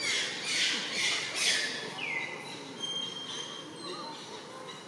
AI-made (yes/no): no